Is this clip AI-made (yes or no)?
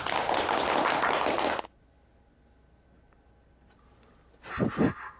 no